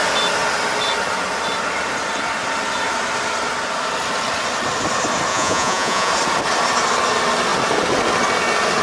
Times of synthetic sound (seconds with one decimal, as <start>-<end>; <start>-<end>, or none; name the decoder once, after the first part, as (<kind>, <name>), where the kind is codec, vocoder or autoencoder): 5.3-6.1 (vocoder, Vocos)